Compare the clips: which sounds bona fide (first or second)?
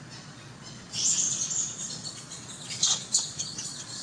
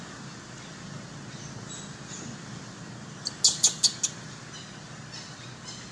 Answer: second